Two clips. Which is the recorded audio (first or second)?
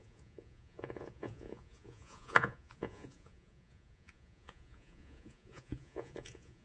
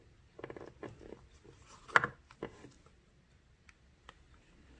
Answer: second